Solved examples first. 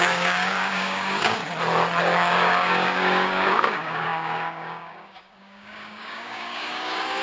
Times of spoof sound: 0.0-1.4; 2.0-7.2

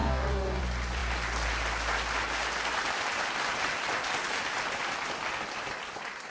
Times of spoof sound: 0.0-0.6

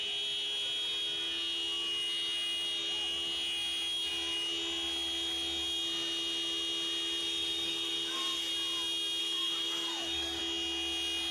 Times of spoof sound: 7.2-8.5; 9.2-10.4

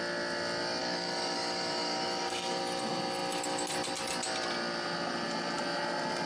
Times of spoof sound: 0.8-2.6

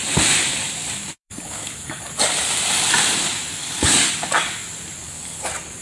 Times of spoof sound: 1.2-2.1; 3.6-4.1; 5.0-5.8

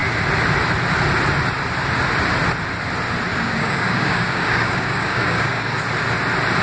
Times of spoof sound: 3.3-5.8

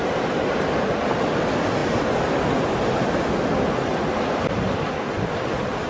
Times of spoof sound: none